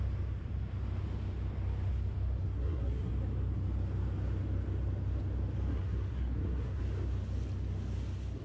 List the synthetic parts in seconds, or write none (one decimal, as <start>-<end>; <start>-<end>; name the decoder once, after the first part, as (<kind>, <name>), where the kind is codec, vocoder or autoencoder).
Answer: 2.4-3.1 (codec, SNAC); 5.7-6.8